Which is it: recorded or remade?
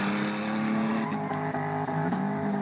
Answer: recorded